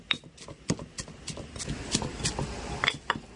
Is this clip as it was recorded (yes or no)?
yes